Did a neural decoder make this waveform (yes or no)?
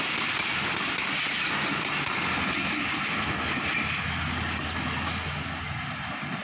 no